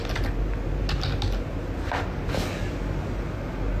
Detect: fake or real real